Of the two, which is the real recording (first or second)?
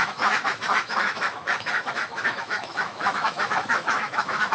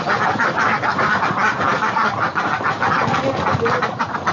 second